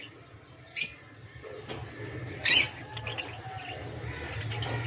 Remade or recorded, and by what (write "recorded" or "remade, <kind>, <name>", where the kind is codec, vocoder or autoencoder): recorded